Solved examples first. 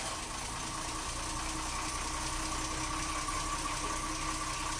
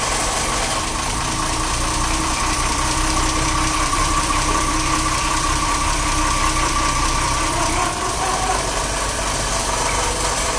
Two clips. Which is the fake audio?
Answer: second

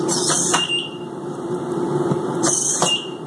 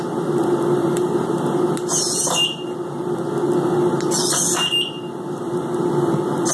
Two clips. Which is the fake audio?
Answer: first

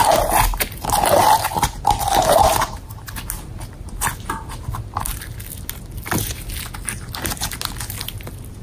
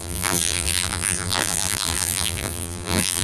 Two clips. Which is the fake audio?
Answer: second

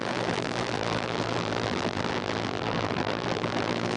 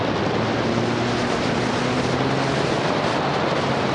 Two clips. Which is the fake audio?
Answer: first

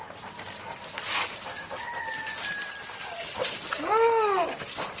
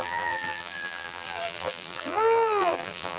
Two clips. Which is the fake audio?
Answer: second